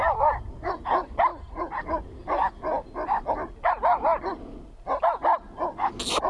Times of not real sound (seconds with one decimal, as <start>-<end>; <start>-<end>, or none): none